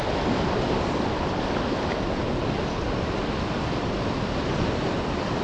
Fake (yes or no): no